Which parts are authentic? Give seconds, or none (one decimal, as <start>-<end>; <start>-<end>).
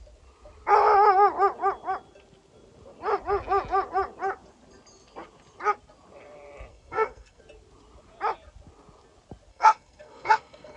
0.0-6.7; 7.4-9.5